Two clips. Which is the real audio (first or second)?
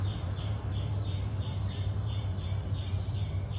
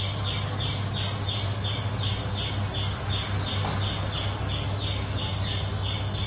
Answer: second